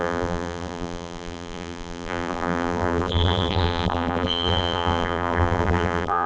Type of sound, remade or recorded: remade